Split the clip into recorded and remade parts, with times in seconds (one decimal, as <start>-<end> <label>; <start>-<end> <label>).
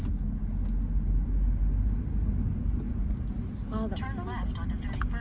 0.0-5.2 recorded